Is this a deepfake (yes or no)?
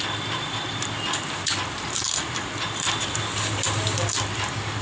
yes